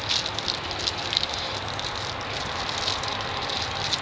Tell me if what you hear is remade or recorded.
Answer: recorded